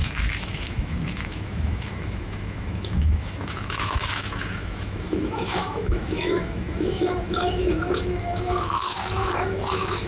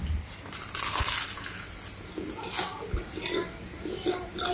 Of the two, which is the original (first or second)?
second